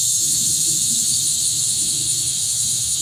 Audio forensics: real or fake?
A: fake